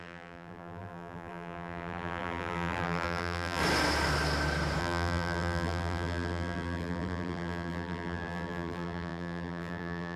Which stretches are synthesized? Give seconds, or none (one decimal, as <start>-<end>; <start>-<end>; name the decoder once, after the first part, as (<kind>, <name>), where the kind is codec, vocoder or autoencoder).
0.0-3.6 (vocoder, BigVGAN v2); 4.8-10.2